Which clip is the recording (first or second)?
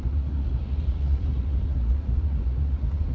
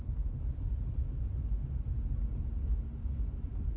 second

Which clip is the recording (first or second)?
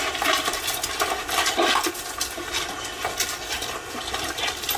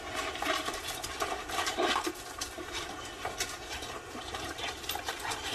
first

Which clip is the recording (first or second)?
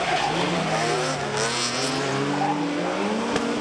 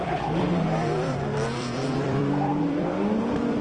first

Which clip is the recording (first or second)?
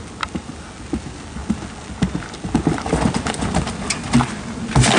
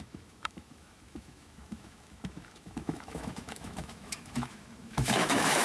first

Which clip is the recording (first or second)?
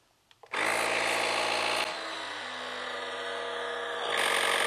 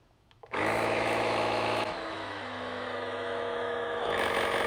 first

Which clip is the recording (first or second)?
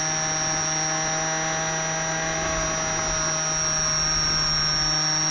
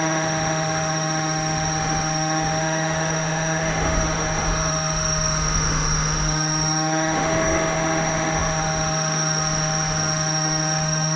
first